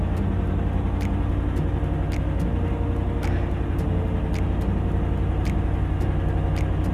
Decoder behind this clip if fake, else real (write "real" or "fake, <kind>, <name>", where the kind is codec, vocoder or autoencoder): real